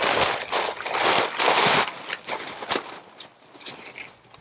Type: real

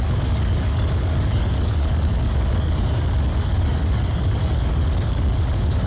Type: fake